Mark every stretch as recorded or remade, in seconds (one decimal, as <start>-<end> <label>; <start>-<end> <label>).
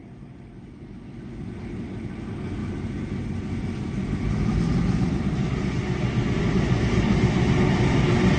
0.0-8.4 recorded